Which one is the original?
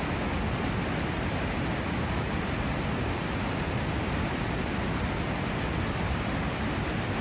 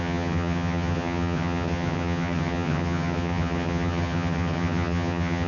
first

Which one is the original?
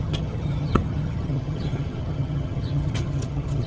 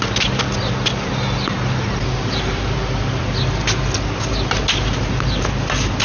second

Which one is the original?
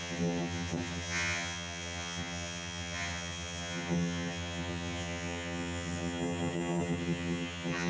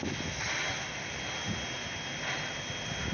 second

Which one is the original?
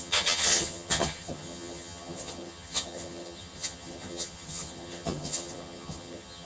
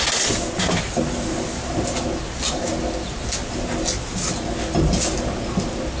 second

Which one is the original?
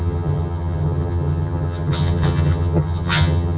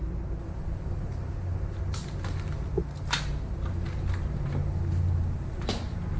second